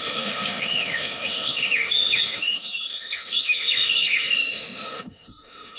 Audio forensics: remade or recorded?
remade